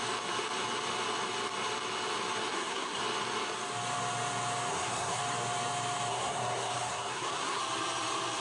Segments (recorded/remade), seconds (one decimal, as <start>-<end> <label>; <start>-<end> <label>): 0.0-2.5 recorded; 2.5-3.0 remade; 3.0-4.7 recorded; 4.7-5.2 remade; 5.2-6.1 recorded; 6.1-7.6 remade; 7.6-8.4 recorded